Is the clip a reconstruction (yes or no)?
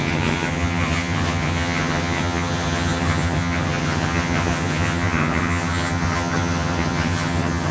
yes